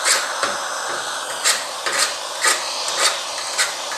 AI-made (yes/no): no